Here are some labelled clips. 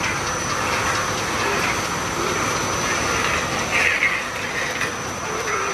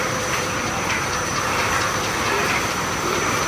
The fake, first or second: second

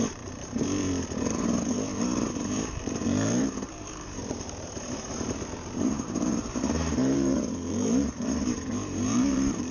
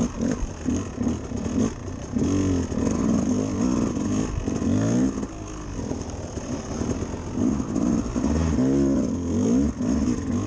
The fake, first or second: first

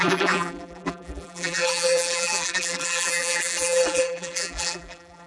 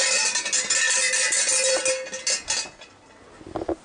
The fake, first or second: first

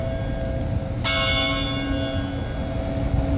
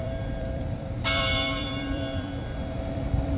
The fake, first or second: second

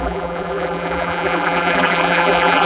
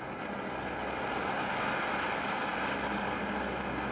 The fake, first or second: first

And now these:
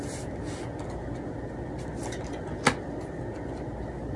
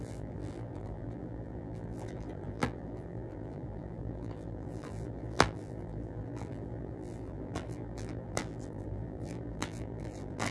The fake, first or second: second